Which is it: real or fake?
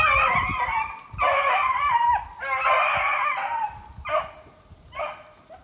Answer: real